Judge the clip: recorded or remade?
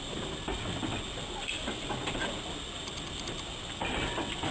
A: recorded